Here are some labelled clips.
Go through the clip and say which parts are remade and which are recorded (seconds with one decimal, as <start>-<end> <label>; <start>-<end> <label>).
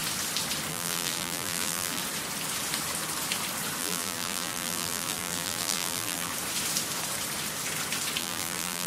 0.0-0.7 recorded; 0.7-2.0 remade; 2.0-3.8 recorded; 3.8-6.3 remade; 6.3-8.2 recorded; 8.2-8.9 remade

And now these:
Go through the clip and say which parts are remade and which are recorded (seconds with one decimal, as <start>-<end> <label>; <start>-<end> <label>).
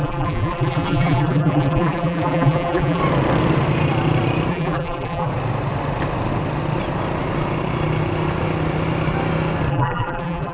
0.0-3.0 remade; 3.0-4.5 recorded; 4.5-5.3 remade; 5.3-9.7 recorded; 9.7-10.5 remade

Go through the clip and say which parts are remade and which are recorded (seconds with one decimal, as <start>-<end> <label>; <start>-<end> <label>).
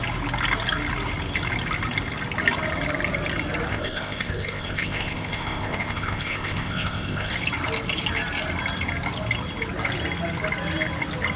0.0-3.7 recorded; 3.7-7.3 remade; 7.3-11.4 recorded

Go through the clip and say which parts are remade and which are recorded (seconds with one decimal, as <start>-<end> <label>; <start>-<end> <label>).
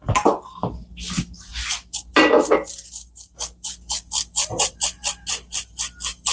0.0-6.3 recorded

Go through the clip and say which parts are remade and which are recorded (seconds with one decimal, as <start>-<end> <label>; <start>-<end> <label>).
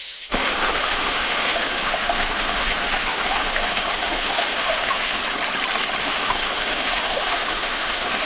0.0-5.2 remade; 5.2-6.0 recorded; 6.0-8.3 remade